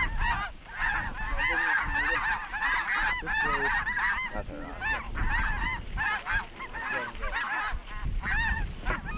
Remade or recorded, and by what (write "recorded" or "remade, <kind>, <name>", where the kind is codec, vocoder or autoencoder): recorded